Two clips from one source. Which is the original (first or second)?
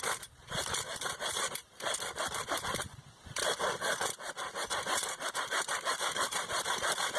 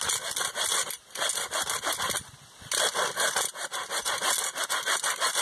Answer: second